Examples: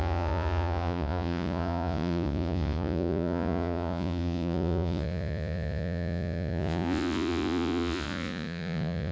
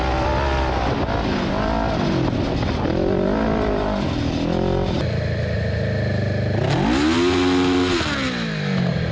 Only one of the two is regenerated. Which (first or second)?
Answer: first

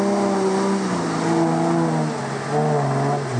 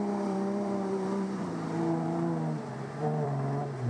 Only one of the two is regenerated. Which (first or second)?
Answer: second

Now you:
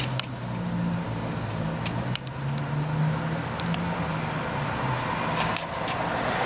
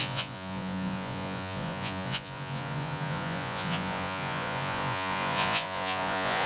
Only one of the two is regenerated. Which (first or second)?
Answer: second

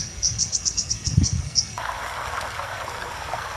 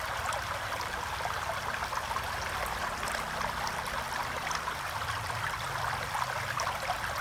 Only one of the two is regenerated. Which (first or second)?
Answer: first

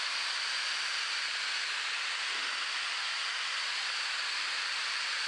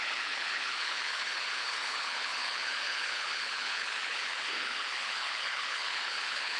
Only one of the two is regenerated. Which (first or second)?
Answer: second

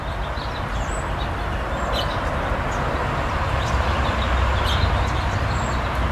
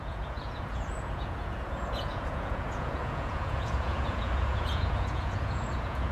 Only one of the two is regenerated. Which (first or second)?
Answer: second